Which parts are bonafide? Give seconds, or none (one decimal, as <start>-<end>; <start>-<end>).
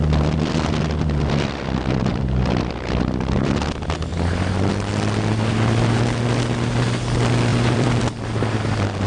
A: 0.0-2.1; 2.7-7.5; 8.0-9.1